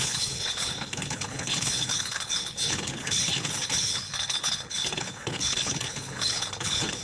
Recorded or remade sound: remade